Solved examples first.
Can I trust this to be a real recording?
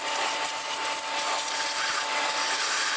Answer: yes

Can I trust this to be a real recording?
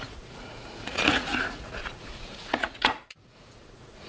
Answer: no